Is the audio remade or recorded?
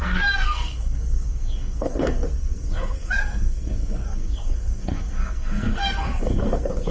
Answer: remade